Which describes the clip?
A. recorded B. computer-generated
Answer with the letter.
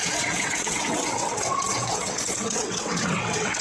B